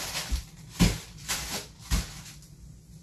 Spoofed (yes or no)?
no